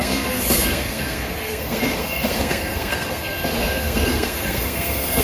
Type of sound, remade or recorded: remade